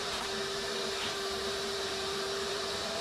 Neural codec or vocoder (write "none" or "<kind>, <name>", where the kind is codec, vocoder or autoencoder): vocoder, BigVGAN v2